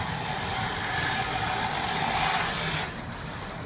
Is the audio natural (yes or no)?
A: yes